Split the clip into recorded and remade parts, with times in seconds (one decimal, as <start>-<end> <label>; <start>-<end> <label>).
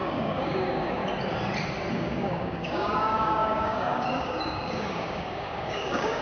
0.0-1.0 remade; 1.0-1.9 recorded; 1.9-6.2 remade